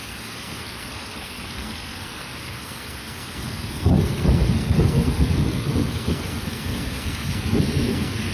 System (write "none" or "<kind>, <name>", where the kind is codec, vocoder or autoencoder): codec, SNAC